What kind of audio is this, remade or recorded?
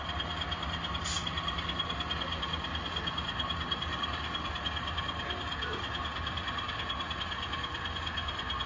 recorded